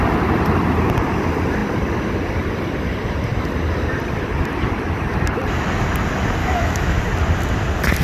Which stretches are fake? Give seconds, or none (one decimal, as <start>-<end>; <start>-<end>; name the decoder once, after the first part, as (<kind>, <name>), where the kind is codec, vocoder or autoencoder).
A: 6.4-7.0 (autoencoder, DAC-VAE)